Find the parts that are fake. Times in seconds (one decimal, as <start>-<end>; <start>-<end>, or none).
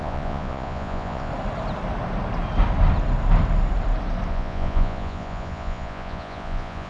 0.0-1.3; 4.3-6.9